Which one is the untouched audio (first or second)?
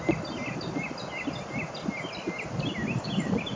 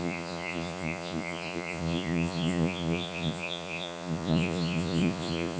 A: first